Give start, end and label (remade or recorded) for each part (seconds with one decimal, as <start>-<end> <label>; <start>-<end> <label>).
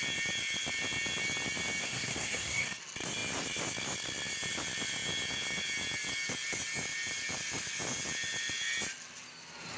0.0-1.8 recorded; 1.8-2.8 remade; 2.8-9.8 recorded